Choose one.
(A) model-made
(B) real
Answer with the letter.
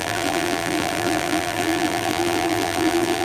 A